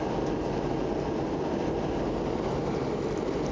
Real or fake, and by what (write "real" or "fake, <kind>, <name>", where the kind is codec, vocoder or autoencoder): real